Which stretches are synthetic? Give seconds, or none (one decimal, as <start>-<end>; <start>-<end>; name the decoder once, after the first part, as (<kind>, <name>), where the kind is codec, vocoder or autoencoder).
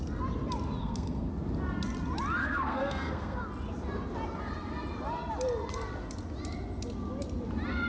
0.8-1.3 (codec, SNAC); 2.4-3.4